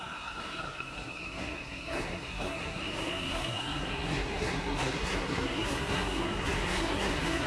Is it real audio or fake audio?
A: fake